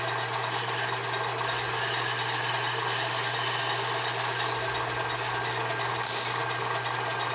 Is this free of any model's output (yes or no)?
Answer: yes